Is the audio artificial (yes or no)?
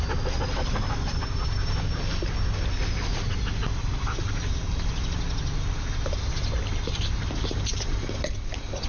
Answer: no